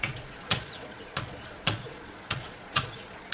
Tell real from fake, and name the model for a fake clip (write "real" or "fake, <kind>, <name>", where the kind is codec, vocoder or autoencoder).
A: fake, vocoder, Vocos